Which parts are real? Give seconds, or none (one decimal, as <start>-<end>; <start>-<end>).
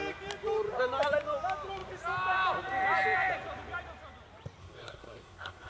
0.0-4.6